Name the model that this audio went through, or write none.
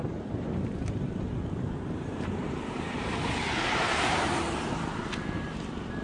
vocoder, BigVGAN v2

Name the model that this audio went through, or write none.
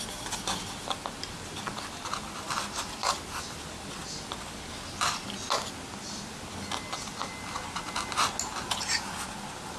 none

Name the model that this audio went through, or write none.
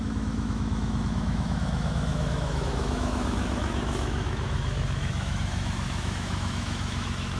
autoencoder, DAC-VAE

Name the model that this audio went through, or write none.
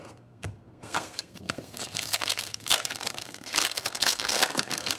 codec, SNAC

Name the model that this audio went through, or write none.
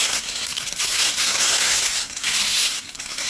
codec, SNAC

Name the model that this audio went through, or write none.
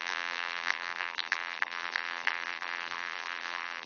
vocoder, BigVGAN v2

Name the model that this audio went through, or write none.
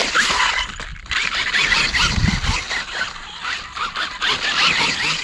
none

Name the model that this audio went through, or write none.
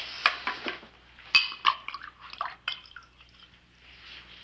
none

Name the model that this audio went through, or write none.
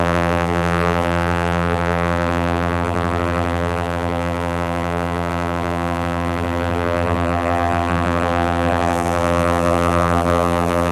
vocoder, BigVGAN v2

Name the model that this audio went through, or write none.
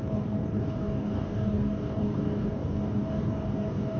codec, DAC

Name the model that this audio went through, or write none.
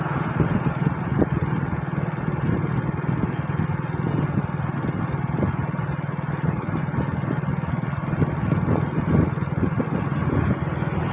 none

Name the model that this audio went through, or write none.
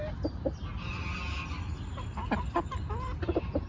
none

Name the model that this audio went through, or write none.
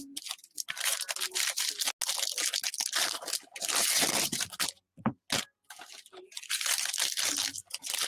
none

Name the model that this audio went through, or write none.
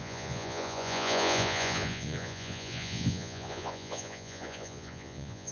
vocoder, Vocos